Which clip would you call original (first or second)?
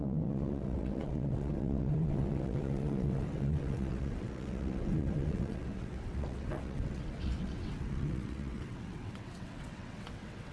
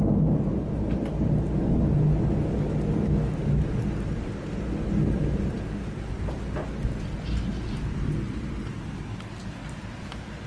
second